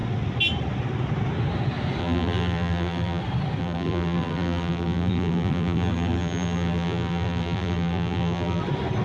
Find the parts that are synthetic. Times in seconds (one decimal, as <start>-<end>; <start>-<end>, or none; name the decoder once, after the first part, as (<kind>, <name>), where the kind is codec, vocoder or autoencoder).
2.0-3.2 (vocoder, BigVGAN v2); 3.6-8.6